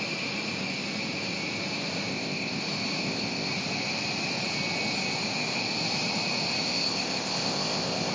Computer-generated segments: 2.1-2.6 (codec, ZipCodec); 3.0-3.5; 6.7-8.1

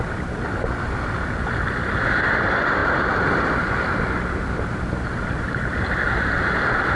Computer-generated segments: 0.0-7.0 (vocoder, BigVGAN v2)

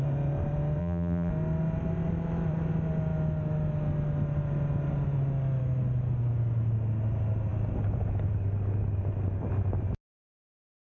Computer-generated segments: 0.8-1.3 (vocoder, BigVGAN v2)

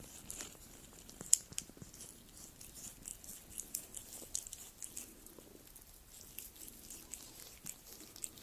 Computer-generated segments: none

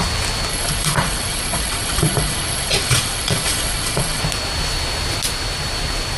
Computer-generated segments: 0.5-4.2 (vocoder, Vocos)